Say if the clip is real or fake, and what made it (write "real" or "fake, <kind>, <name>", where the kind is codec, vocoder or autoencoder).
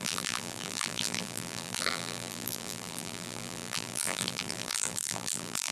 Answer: fake, vocoder, BigVGAN v2